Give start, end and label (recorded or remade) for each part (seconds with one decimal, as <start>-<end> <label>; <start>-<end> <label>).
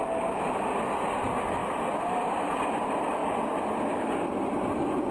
0.0-5.1 recorded